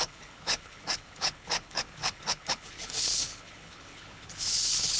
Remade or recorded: remade